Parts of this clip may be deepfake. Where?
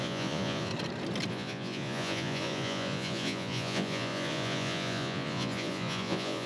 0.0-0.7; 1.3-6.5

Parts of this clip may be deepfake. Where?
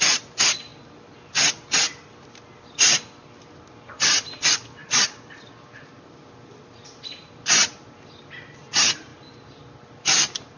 none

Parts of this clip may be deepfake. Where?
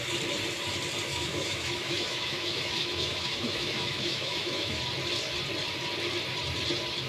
1.1-4.8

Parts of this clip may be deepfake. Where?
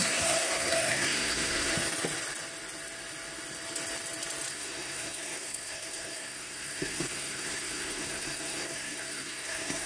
0.0-1.7; 4.5-9.9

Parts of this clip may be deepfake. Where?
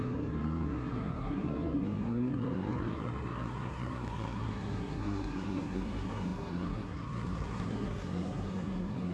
0.0-9.1